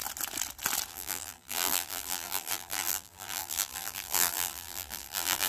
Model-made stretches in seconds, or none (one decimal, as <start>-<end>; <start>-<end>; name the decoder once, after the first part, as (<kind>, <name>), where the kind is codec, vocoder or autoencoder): 0.9-5.5 (vocoder, BigVGAN v2)